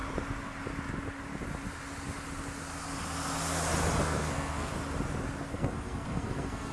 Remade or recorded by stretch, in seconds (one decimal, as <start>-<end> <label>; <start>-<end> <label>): 0.0-4.0 recorded; 4.0-4.7 remade; 4.7-5.5 recorded; 5.5-6.7 remade